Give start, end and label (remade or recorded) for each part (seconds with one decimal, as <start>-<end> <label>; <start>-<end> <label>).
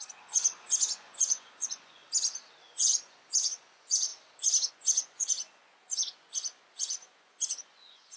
0.0-2.0 remade; 2.0-2.6 recorded; 2.6-4.1 remade; 4.1-4.7 recorded; 4.7-8.2 remade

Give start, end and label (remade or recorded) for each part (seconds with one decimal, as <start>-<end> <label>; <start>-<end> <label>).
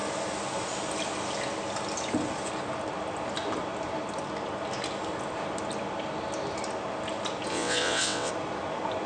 0.0-7.5 recorded; 7.5-8.3 remade; 8.3-9.1 recorded